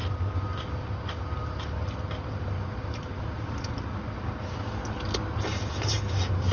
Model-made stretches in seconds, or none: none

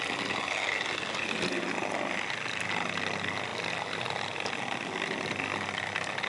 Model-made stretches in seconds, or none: none

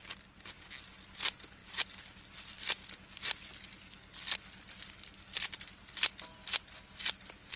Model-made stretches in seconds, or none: none

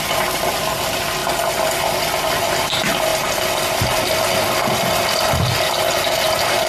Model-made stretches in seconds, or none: none

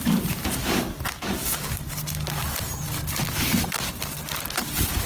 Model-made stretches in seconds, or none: none

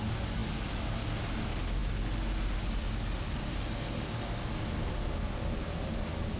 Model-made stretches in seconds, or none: none

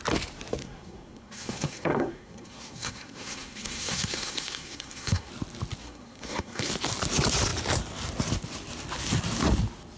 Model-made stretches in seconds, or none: 0.6-5.3 (codec, SNAC); 5.8-6.7

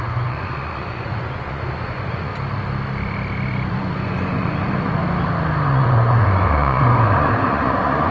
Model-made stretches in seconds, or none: 0.0-2.3 (vocoder, Vocos); 3.7-5.0; 5.7-8.1